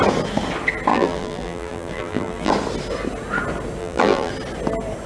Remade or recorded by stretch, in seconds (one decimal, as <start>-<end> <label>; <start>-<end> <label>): 0.0-0.9 recorded; 0.9-2.5 remade; 2.5-3.8 recorded; 3.8-4.3 remade; 4.3-5.1 recorded